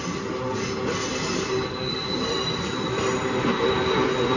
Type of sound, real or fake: real